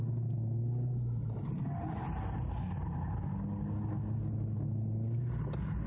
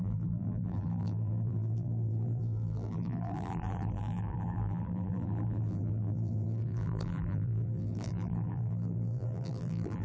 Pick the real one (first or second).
first